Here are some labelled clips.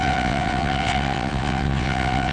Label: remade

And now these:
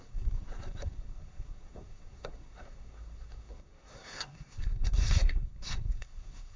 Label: remade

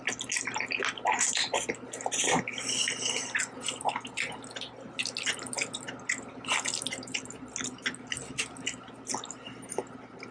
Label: recorded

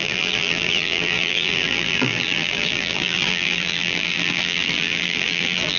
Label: remade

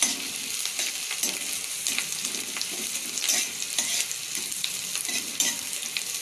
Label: remade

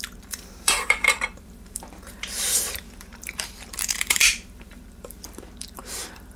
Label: remade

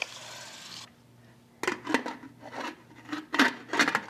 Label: recorded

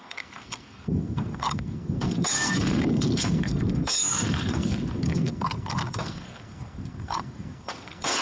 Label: remade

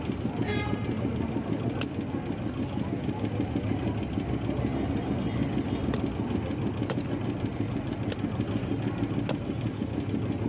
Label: recorded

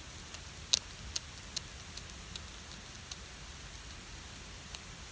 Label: recorded